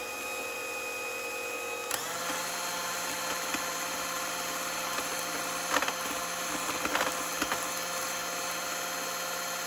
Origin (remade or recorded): recorded